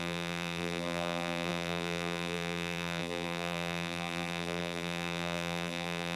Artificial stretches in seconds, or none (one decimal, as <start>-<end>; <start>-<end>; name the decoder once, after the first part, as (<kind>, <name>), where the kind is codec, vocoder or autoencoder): 0.0-6.2 (vocoder, BigVGAN v2)